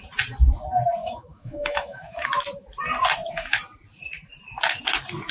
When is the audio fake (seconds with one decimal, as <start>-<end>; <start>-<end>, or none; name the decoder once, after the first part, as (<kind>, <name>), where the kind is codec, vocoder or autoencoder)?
1.0-2.3 (autoencoder, DAC-VAE)